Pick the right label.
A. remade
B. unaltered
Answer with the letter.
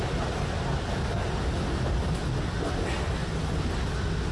B